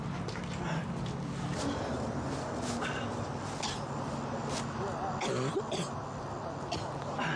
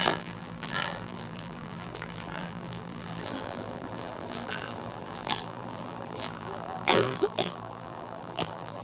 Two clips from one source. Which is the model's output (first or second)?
second